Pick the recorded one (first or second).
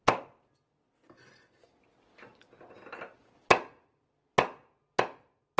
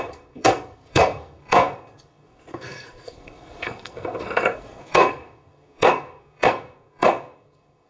first